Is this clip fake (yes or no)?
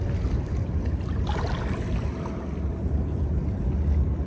no